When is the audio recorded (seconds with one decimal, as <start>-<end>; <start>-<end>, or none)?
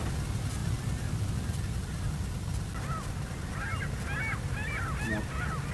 0.0-5.7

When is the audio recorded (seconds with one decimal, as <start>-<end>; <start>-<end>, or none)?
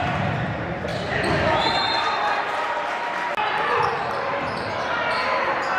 0.0-5.8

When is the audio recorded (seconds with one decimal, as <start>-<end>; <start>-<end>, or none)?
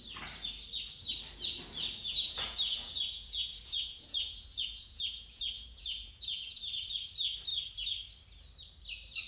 0.0-2.0; 6.6-9.3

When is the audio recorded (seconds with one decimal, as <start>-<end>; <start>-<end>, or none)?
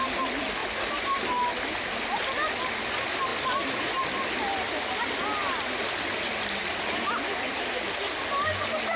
0.0-9.0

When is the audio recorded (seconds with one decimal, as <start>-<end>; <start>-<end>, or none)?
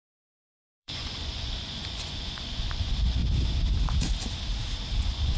3.2-5.0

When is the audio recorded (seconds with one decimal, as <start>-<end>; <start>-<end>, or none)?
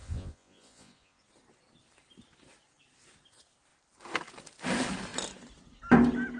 1.2-6.4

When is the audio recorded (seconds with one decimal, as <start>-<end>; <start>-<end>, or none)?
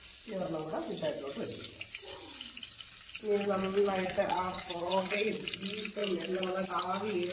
0.0-3.6; 5.3-7.3